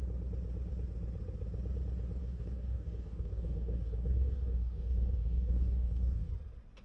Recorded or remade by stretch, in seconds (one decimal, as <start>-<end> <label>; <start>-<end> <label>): 0.0-2.2 recorded; 2.2-6.3 remade; 6.3-6.8 recorded